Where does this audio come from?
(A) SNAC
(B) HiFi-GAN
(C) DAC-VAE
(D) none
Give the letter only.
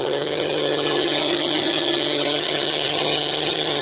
B